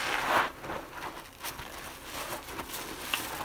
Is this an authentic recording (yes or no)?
yes